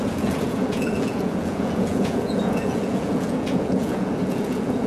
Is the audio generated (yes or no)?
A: yes